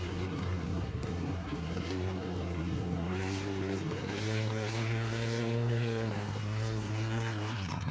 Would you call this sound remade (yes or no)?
yes